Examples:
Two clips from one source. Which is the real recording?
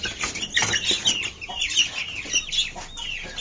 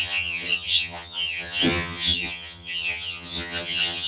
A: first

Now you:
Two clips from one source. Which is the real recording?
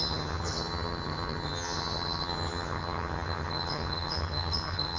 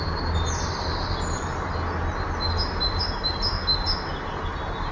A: second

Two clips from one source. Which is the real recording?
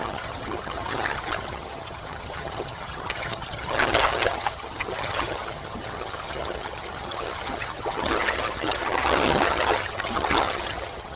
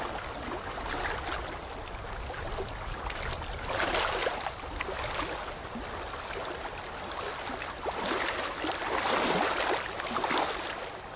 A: second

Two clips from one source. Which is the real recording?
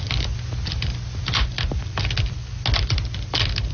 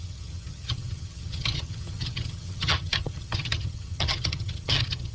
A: first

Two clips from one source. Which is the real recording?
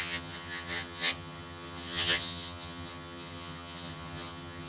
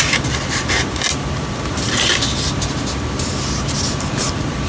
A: second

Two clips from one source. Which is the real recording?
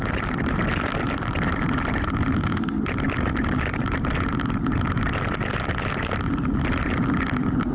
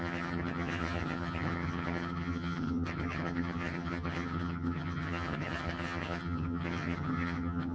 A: first